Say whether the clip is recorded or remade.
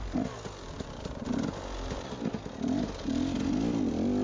recorded